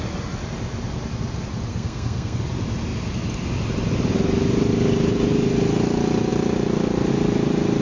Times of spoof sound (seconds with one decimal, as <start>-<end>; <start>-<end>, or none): 1.7-2.4